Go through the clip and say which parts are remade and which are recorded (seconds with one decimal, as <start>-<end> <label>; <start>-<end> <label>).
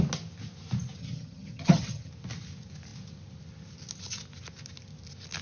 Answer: 0.0-1.0 recorded; 1.0-2.1 remade; 2.1-5.4 recorded